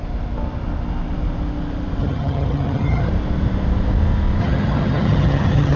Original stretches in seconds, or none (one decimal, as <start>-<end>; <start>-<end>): 0.0-2.0; 3.1-4.4

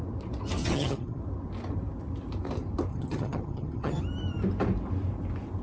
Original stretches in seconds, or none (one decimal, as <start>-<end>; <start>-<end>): 0.0-0.6; 1.2-2.9; 4.0-5.6

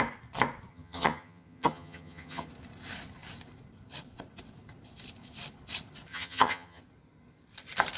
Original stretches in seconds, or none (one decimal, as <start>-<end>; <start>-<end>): 0.0-0.7; 2.5-6.1; 6.8-8.0

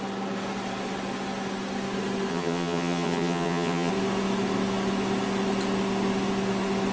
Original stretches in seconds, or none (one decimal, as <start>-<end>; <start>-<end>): 0.0-2.3; 3.9-6.9

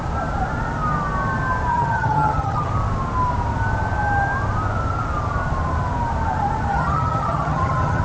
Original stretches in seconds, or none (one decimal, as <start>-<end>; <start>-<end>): 0.0-1.7; 2.7-6.7

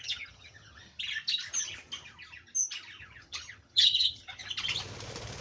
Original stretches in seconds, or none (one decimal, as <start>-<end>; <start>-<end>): 0.9-3.0; 4.4-5.4